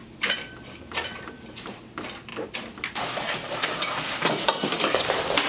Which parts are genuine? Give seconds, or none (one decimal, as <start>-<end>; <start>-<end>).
0.0-2.3